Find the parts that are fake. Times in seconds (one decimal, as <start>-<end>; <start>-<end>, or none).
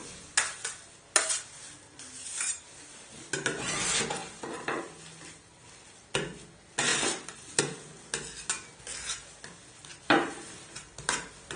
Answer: 4.2-4.8; 6.9-7.6; 9.9-10.6